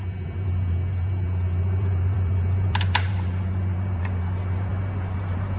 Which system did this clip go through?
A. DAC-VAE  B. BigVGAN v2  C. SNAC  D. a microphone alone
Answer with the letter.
B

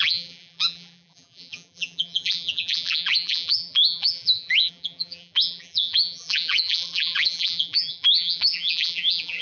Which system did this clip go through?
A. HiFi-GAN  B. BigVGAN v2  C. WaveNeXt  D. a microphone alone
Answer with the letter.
B